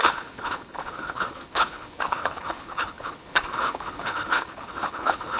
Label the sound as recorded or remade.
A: remade